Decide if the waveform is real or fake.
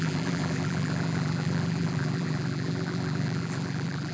fake